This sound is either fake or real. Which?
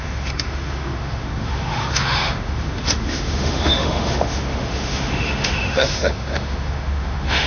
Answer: fake